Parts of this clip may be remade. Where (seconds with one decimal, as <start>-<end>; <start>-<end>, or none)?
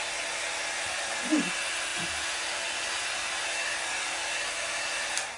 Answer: none